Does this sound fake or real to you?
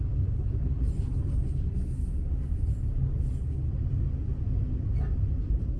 real